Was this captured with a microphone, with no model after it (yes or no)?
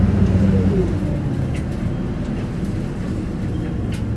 yes